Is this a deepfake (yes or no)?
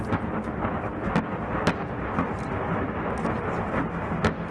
no